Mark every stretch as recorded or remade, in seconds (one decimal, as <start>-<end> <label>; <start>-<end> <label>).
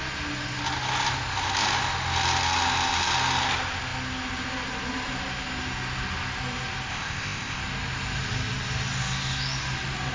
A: 0.0-6.9 recorded; 6.9-7.6 remade; 7.6-10.1 recorded